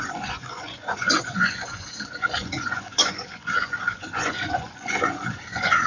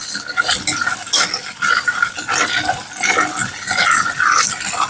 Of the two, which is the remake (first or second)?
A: first